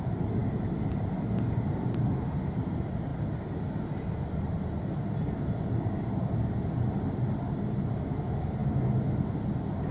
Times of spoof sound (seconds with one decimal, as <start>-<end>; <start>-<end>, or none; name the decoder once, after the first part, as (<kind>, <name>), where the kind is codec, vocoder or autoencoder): none